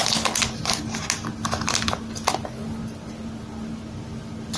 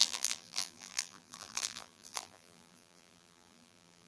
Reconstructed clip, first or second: second